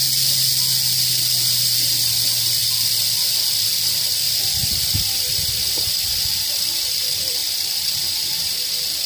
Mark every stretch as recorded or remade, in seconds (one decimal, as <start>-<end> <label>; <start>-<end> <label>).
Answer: 0.0-9.1 recorded